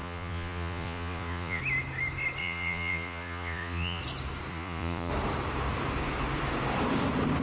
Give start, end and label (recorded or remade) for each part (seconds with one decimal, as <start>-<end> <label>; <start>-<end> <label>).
0.0-1.6 remade; 1.6-2.4 recorded; 2.4-4.0 remade; 4.0-4.5 recorded; 4.5-5.1 remade; 5.1-7.4 recorded